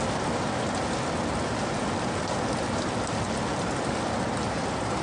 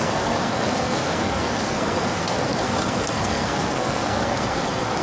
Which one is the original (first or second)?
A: first